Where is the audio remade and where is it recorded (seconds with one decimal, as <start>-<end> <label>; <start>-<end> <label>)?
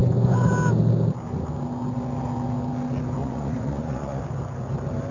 0.0-0.5 remade; 0.5-3.2 recorded; 3.2-4.2 remade; 4.2-5.1 recorded